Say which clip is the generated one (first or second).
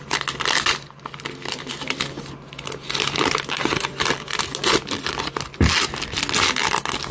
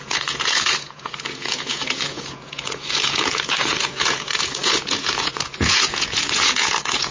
second